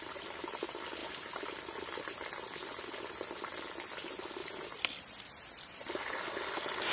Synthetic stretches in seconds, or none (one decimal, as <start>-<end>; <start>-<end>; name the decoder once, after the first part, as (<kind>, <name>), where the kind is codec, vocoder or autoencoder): 2.6-3.3 (vocoder, BigVGAN v2); 4.4-5.9